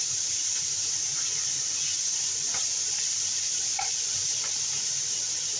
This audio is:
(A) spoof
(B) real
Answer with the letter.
A